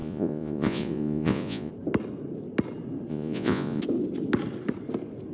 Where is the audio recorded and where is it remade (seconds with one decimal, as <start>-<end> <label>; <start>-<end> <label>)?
0.0-1.7 remade; 1.7-3.1 recorded; 3.1-3.8 remade; 3.8-5.3 recorded

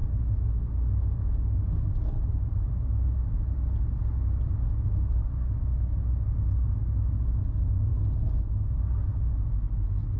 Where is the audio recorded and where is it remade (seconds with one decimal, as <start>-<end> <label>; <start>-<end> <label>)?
0.0-10.2 recorded

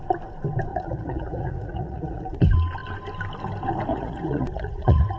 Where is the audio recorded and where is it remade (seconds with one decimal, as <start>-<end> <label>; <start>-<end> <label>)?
0.0-0.7 recorded; 0.7-2.4 remade; 2.4-3.9 recorded; 3.9-5.2 remade

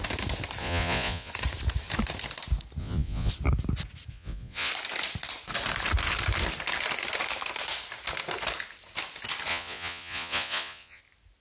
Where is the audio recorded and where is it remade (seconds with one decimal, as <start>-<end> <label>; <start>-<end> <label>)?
0.0-0.6 recorded; 0.6-1.3 remade; 1.3-2.8 recorded; 2.8-3.3 remade; 3.3-4.1 recorded; 4.1-4.7 remade; 4.7-9.5 recorded; 9.5-11.0 remade; 11.0-11.4 recorded

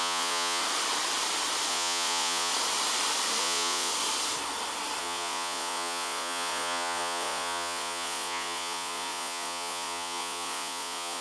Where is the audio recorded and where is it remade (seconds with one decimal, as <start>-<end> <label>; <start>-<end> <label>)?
0.0-0.6 remade; 0.6-1.7 recorded; 1.7-2.5 remade; 2.5-3.4 recorded; 3.4-3.9 remade; 3.9-5.0 recorded; 5.0-11.2 remade

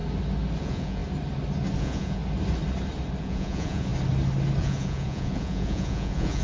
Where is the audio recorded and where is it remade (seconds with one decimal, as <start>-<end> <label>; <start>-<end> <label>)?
0.0-0.6 recorded; 0.6-1.0 remade; 1.0-1.8 recorded; 1.8-2.2 remade; 2.2-3.2 recorded; 3.2-3.9 remade; 3.9-4.6 recorded; 4.6-6.4 remade

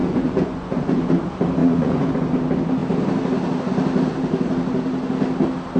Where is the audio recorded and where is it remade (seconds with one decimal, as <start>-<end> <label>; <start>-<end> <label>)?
0.0-1.1 remade; 1.1-1.6 recorded; 1.6-2.1 remade; 2.1-5.8 recorded

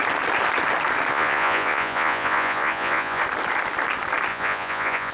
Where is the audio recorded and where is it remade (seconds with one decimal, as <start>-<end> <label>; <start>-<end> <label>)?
0.0-1.1 recorded; 1.1-3.2 remade; 3.2-4.3 recorded; 4.3-5.1 remade